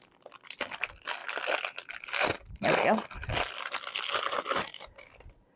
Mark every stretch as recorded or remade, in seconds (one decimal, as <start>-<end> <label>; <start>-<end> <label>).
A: 0.0-5.6 recorded